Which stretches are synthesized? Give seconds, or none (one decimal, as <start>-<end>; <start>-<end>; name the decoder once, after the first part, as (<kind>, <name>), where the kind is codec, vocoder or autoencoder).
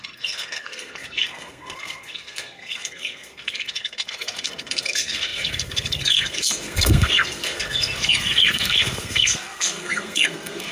0.0-10.7 (codec, SNAC)